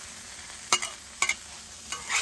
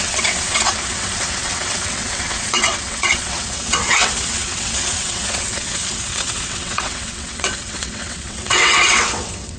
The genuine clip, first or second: first